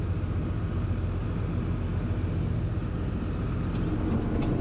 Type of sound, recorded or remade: recorded